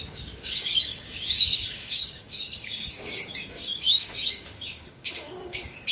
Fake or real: fake